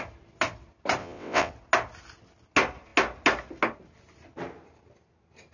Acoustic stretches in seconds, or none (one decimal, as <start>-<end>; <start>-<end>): 0.0-1.0; 1.5-5.5